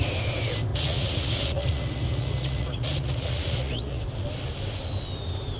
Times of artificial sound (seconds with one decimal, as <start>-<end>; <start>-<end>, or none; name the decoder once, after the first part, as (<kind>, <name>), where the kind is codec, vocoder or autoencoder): 0.7-4.0 (vocoder, Vocos)